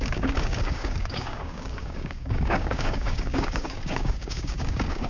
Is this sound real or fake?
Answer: fake